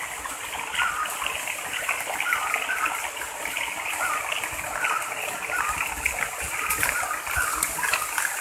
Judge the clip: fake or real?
real